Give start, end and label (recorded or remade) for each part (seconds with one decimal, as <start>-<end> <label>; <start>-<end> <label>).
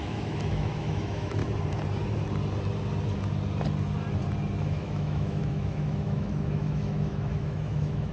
0.0-1.4 remade; 1.4-4.6 recorded; 4.6-8.1 remade